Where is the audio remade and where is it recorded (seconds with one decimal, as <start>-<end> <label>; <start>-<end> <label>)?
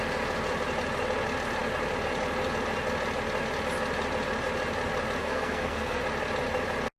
0.0-5.2 recorded; 5.2-6.0 remade; 6.0-7.0 recorded